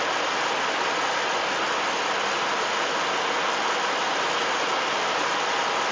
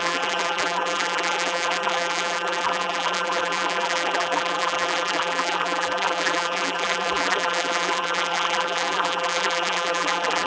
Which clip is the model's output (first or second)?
second